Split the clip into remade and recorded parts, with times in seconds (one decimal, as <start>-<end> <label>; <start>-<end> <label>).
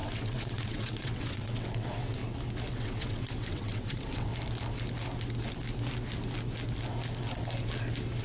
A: 0.0-2.2 remade; 2.2-2.7 recorded; 2.7-4.3 remade; 4.3-8.2 recorded